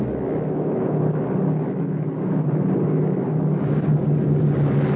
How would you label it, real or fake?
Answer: real